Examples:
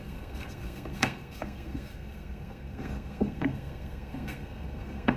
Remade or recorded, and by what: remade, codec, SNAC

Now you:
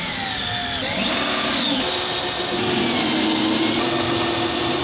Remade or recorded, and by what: recorded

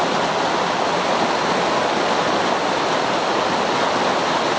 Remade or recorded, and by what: recorded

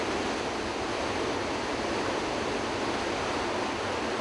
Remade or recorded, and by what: recorded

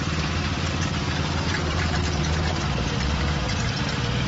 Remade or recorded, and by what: remade, vocoder, BigVGAN v2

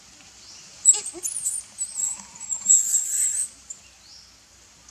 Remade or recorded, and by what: recorded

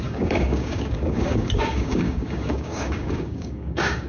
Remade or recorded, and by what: remade, codec, DAC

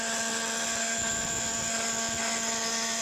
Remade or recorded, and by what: recorded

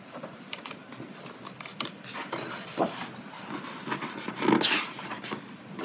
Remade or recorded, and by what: recorded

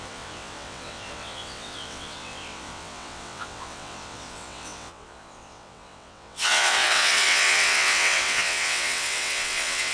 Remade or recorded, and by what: remade, vocoder, WaveNeXt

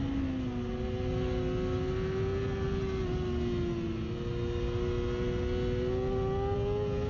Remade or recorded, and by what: recorded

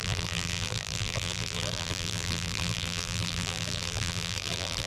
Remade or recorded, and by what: remade, vocoder, BigVGAN v2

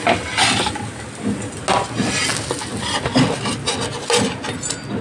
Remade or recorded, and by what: recorded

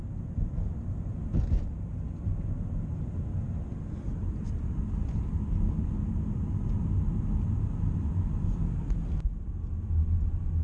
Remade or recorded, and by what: recorded